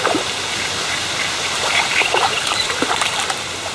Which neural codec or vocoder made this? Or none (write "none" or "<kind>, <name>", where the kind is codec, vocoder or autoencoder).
vocoder, BigVGAN v2